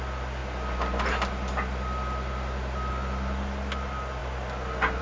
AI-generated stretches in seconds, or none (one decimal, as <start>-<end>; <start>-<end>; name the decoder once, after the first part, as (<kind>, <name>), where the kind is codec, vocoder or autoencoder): none